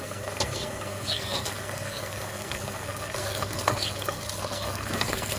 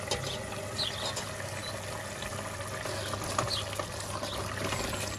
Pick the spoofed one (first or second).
first